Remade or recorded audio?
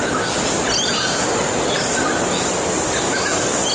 recorded